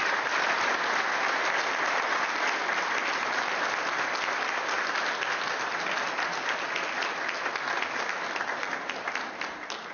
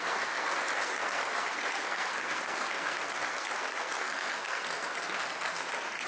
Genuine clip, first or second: first